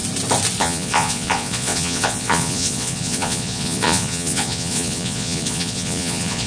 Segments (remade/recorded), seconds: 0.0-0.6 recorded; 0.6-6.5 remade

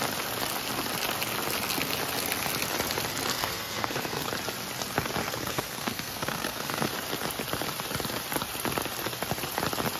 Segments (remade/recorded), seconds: 0.0-3.3 recorded; 3.3-4.3 remade; 4.3-5.2 recorded; 5.2-6.9 remade; 6.9-10.0 recorded

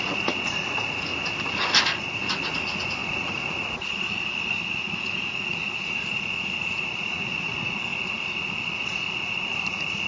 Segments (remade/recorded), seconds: 0.0-1.1 remade; 1.1-1.8 recorded; 1.8-10.1 remade